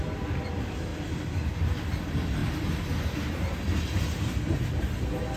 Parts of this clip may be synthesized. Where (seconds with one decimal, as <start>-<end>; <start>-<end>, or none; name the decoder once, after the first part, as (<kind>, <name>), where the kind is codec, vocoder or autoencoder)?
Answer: 0.9-1.8 (vocoder, BigVGAN v2)